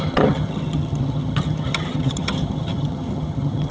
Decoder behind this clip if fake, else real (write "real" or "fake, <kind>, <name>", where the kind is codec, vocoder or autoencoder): fake, vocoder, HiFi-GAN